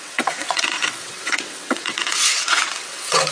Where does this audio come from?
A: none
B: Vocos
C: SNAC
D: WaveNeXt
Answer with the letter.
D